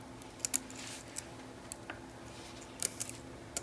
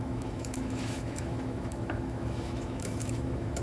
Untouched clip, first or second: first